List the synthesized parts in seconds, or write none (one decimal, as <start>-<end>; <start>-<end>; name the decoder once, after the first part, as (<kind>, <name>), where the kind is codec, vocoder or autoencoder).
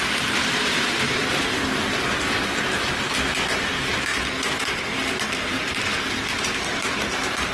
1.2-2.5 (vocoder, BigVGAN v2)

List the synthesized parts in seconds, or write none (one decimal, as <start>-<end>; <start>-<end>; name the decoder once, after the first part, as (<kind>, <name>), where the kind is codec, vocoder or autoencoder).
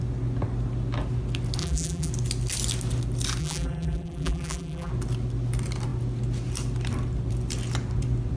1.6-2.1 (vocoder, BigVGAN v2); 3.4-4.9